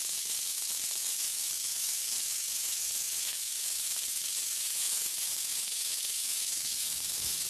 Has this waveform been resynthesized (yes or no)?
yes